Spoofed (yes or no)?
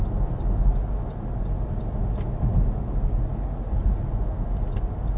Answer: no